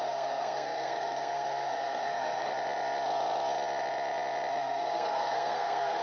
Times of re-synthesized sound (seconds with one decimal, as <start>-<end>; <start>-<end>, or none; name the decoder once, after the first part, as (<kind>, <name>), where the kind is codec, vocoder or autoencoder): 0.0-2.5 (codec, SNAC); 4.5-6.0